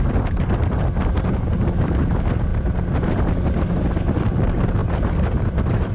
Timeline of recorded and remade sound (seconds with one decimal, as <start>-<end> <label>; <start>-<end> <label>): 0.0-2.5 recorded; 2.5-3.6 remade; 3.6-4.8 recorded; 4.8-5.9 remade